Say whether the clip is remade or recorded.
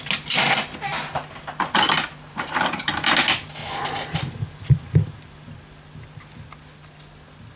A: recorded